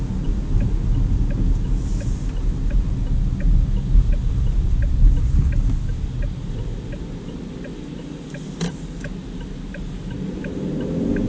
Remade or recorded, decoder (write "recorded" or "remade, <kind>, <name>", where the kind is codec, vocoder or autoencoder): recorded